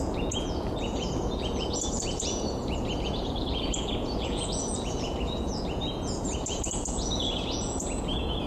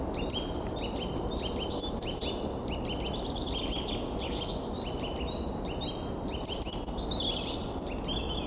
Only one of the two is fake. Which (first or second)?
first